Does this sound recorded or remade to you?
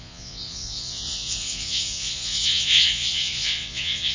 remade